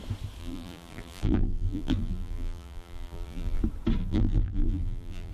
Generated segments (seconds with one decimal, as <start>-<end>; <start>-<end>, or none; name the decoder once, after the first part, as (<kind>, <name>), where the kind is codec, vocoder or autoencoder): 0.4-3.6 (vocoder, BigVGAN v2); 4.0-5.3